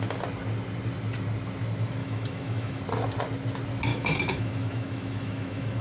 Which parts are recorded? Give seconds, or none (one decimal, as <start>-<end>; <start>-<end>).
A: 0.0-2.0; 2.8-3.9